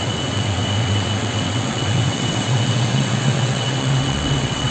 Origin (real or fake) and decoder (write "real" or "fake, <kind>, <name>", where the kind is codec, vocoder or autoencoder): fake, vocoder, WaveNeXt